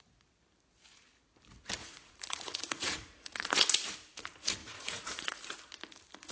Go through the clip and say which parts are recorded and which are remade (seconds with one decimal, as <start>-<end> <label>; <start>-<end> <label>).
0.0-1.8 recorded; 1.8-3.6 remade; 3.6-4.6 recorded; 4.6-5.6 remade; 5.6-6.3 recorded